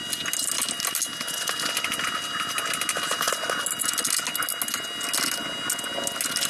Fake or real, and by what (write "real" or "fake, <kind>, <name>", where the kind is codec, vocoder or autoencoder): real